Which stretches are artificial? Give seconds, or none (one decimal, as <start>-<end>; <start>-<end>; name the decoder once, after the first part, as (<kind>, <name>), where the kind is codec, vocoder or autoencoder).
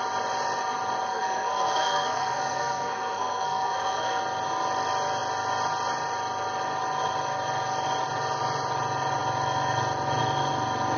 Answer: 1.1-4.2 (codec, SNAC)